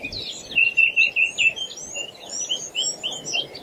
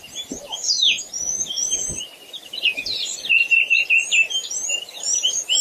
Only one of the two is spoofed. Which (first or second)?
second